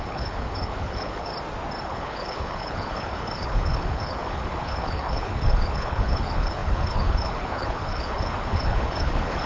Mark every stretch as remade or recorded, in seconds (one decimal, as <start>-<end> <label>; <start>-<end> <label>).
0.0-1.3 remade; 1.3-1.8 recorded; 1.8-9.5 remade